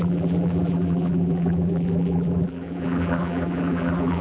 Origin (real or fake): fake